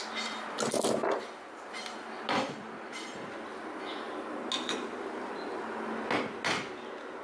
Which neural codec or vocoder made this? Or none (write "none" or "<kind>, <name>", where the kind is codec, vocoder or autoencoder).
none